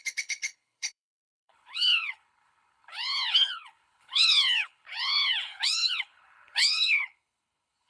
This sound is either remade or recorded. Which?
remade